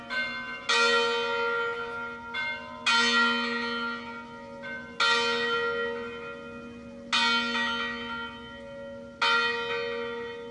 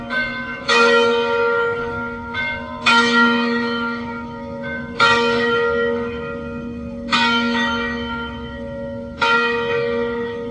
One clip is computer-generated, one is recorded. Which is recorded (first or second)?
first